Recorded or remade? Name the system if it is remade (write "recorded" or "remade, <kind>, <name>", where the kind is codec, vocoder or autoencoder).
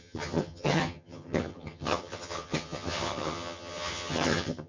remade, vocoder, HiFi-GAN